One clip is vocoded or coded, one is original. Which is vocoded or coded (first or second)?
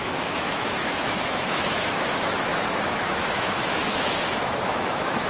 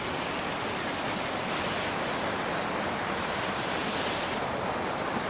first